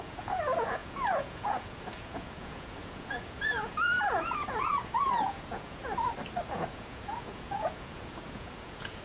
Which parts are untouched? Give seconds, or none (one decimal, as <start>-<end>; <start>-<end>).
5.8-6.5